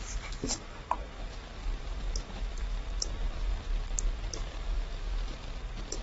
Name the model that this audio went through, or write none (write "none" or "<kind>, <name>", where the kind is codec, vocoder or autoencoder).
vocoder, BigVGAN v2